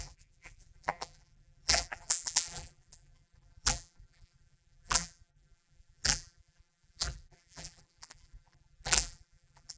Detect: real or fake fake